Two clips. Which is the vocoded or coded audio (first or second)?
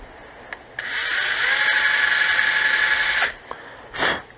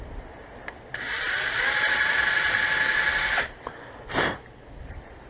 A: second